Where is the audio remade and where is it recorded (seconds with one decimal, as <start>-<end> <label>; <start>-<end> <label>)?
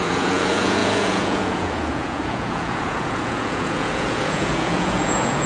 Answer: 0.0-5.5 remade